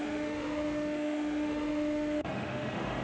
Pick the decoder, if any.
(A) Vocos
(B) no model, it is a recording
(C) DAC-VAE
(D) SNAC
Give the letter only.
C